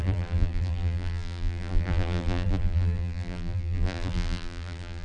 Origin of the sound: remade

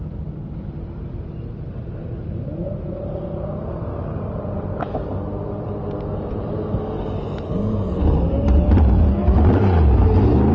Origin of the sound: recorded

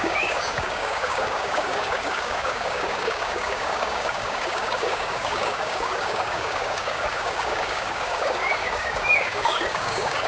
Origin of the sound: remade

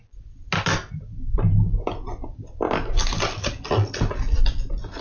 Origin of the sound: recorded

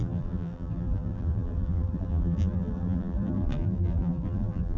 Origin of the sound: remade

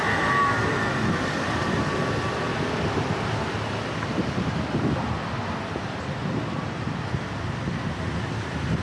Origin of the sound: recorded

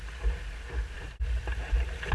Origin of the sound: recorded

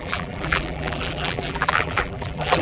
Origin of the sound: remade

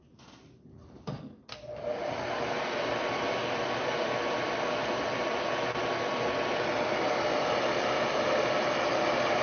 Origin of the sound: recorded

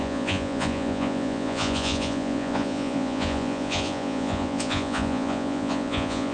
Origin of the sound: remade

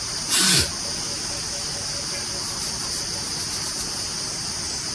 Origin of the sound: recorded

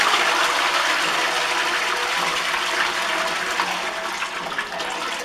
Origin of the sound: recorded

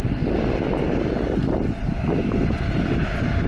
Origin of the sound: recorded